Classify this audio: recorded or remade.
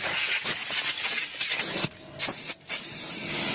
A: recorded